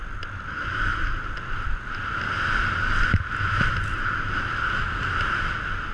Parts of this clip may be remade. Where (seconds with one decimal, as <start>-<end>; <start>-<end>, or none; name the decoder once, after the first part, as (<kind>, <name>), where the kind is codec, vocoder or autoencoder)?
none